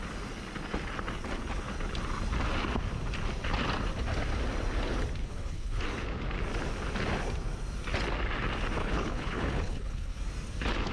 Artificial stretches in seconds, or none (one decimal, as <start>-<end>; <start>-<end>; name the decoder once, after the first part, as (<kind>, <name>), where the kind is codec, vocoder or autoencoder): 5.2-5.8 (codec, HILCodec); 8.8-10.2